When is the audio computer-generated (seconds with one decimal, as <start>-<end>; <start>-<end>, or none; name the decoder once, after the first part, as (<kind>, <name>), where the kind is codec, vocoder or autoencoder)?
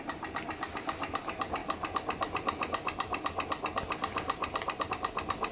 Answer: none